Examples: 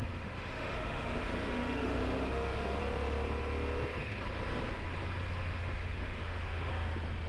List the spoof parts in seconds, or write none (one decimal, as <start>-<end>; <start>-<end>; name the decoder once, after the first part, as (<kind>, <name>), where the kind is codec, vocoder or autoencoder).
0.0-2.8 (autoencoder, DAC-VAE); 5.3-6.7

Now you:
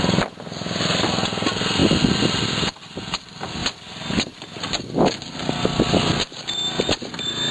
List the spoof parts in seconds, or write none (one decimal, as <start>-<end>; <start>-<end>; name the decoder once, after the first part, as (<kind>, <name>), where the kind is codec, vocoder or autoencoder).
3.6-5.0 (vocoder, BigVGAN v2)

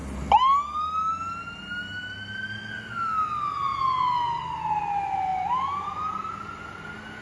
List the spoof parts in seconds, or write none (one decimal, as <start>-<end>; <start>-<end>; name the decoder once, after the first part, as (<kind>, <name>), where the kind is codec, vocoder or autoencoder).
none

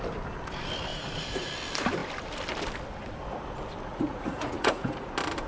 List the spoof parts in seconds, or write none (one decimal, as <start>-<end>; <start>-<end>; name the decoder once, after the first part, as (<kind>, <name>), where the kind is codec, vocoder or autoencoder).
0.9-1.5 (vocoder, Vocos); 3.9-5.1

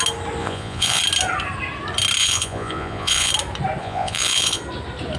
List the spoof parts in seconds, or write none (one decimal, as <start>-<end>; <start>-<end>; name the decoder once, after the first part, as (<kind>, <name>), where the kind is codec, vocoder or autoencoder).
0.4-1.0 (vocoder, Vocos); 2.2-3.3; 3.8-4.6

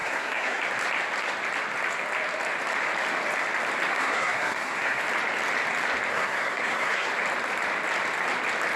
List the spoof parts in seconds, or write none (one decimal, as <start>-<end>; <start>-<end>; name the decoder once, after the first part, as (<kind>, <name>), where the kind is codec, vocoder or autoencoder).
0.0-0.6 (codec, SNAC); 3.9-5.0; 6.1-7.1

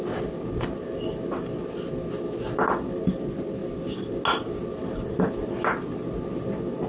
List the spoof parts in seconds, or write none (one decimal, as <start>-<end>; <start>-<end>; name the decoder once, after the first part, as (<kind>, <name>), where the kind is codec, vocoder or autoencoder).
none